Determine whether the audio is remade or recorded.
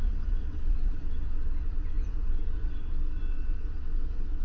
remade